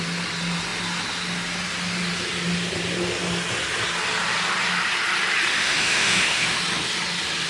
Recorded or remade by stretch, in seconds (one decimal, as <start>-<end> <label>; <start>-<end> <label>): 0.0-5.5 recorded; 5.5-6.6 remade; 6.6-7.5 recorded